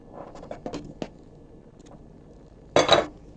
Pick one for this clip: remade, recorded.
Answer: recorded